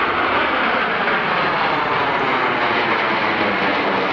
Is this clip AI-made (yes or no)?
no